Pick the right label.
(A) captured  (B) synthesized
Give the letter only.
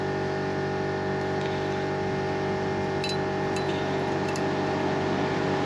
A